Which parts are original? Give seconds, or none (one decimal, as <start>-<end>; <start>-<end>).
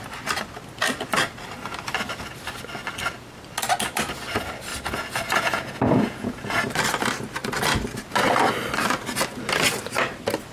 0.0-4.7; 6.6-10.5